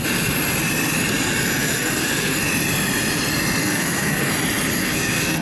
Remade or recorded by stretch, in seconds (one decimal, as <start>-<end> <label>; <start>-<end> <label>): 0.0-1.6 recorded; 1.6-2.4 remade; 2.4-3.6 recorded; 3.6-4.3 remade; 4.3-4.8 recorded; 4.8-5.4 remade